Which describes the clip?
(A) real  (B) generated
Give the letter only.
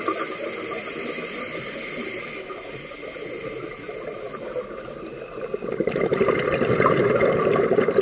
A